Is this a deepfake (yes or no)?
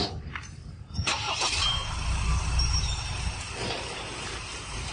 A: yes